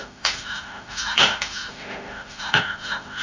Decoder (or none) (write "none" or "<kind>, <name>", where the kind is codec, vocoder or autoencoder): autoencoder, DAC-VAE